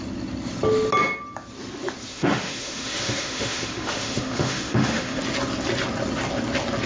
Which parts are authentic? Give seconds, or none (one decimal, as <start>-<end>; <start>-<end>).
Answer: 0.0-2.1; 5.2-6.9